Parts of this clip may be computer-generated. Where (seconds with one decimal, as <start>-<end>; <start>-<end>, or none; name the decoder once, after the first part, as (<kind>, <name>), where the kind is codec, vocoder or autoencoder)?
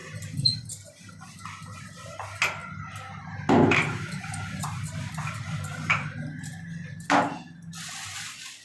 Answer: none